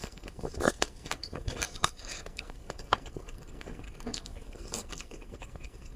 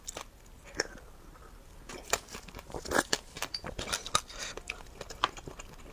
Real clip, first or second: second